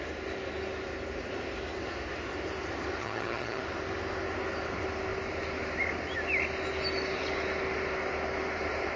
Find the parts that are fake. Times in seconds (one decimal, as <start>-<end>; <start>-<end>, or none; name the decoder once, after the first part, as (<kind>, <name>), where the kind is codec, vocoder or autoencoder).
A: 3.0-3.6 (vocoder, HiFi-GAN)